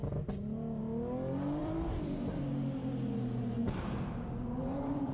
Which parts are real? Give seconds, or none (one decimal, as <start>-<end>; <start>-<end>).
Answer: 0.0-1.6; 2.4-5.1

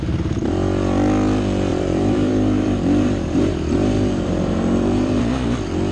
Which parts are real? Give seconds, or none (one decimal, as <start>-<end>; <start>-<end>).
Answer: 0.0-1.7; 5.2-5.9

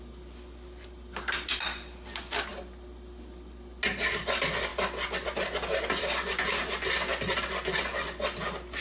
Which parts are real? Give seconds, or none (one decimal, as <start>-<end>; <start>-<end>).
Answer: 0.0-8.8

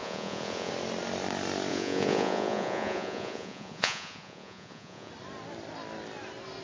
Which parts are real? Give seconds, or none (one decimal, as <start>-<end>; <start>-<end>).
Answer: 0.7-1.7; 5.1-6.6

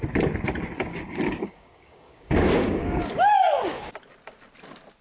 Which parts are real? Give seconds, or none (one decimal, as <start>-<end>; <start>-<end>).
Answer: 0.0-0.9; 3.9-5.0

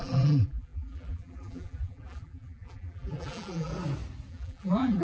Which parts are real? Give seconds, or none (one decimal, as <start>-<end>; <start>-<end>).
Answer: 3.7-4.3